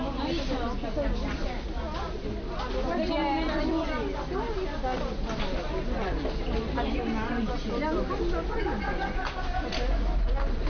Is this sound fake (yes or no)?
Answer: no